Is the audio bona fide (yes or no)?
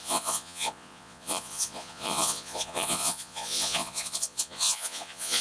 no